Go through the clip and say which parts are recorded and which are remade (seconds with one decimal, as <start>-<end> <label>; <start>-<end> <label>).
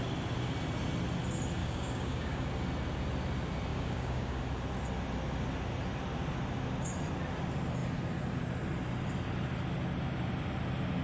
0.0-1.6 recorded; 1.6-2.5 remade; 2.5-3.7 recorded; 3.7-4.4 remade; 4.4-11.0 recorded